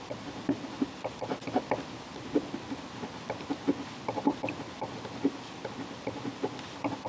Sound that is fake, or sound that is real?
real